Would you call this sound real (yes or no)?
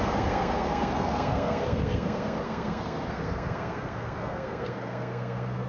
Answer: no